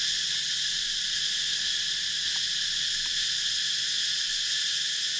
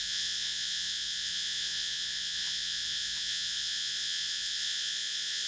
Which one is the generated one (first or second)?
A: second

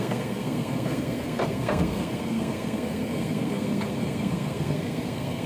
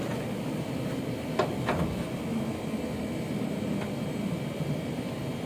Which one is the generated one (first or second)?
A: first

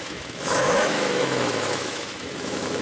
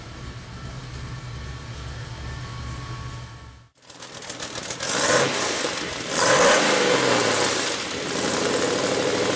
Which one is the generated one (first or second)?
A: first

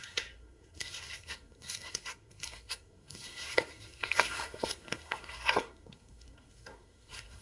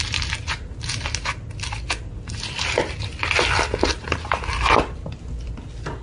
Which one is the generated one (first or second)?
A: first